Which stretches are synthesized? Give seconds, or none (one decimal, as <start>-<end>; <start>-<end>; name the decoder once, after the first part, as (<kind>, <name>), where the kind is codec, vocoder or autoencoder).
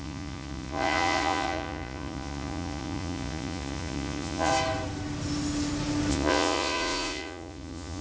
0.0-4.5 (vocoder, Vocos); 6.1-8.0